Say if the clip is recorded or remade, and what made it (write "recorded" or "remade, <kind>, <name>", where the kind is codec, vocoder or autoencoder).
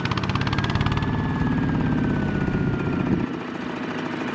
recorded